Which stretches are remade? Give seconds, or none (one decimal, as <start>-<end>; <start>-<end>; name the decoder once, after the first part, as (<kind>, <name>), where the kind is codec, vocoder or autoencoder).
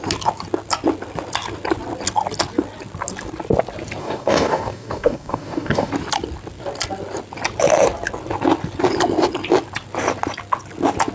4.0-5.9 (codec, DAC)